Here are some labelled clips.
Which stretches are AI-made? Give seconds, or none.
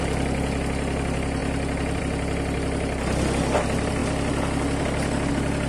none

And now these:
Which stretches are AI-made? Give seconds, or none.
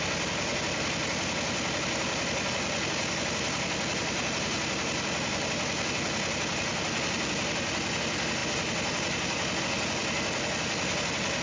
none